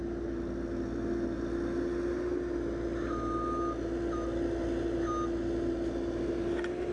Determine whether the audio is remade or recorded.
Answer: recorded